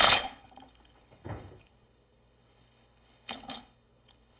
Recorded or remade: remade